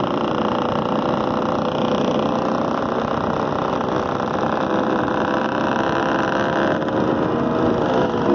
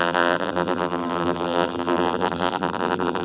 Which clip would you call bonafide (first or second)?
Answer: first